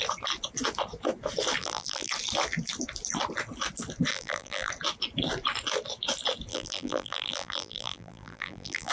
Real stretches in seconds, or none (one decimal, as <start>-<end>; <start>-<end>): 0.0-1.6; 2.1-4.1; 4.7-6.5